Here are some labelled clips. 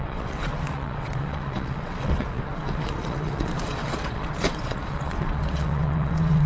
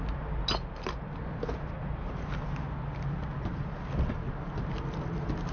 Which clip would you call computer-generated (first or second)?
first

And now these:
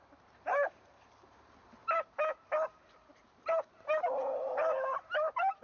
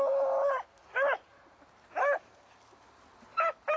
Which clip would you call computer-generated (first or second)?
first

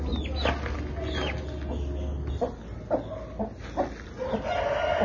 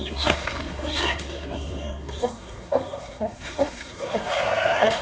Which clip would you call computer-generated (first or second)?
second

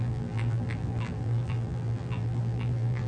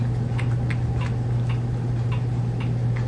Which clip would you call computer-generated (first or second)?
first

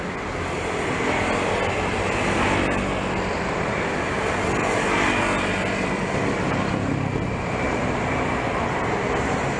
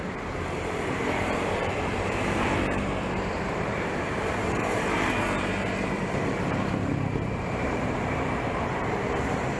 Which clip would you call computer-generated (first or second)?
second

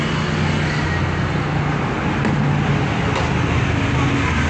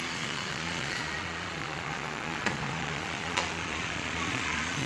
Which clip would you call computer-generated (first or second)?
second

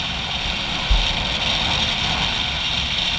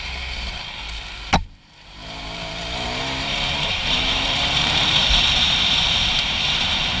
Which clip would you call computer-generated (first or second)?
second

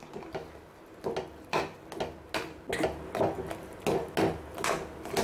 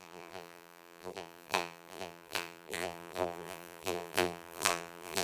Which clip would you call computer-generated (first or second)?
second